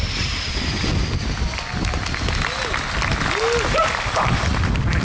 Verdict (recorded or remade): recorded